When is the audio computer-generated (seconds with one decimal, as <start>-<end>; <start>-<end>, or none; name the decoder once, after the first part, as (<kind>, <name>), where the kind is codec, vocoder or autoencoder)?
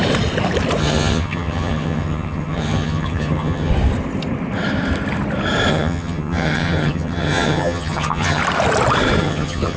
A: 0.8-3.7 (vocoder, HiFi-GAN); 5.7-8.4; 9.2-9.8